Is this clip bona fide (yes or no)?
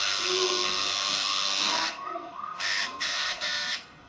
no